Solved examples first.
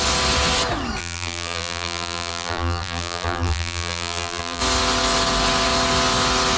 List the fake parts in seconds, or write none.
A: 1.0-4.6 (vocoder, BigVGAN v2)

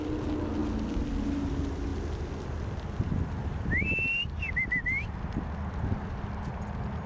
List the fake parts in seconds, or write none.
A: none

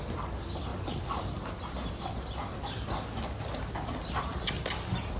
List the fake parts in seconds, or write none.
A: none